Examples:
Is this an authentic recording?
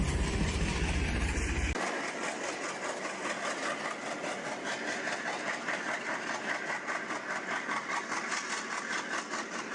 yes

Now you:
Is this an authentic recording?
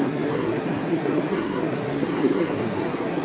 no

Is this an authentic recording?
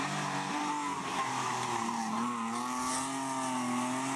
yes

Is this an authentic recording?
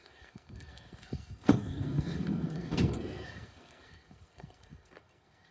no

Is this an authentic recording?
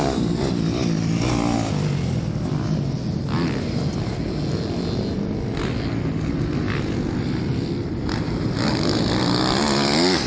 yes